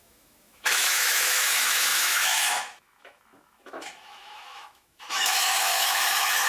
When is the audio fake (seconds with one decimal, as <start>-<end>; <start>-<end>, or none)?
0.0-6.5